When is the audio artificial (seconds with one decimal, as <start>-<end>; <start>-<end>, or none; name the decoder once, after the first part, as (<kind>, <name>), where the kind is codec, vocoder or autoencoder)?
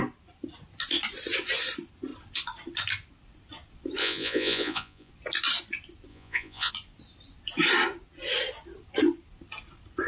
4.0-5.1 (vocoder, Vocos); 6.1-6.7